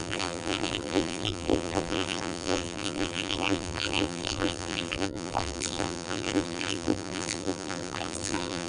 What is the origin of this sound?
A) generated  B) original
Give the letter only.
A